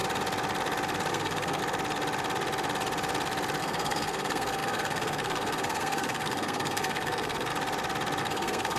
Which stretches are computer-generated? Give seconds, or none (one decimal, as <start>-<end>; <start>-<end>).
1.1-1.6; 3.6-7.5; 8.2-8.8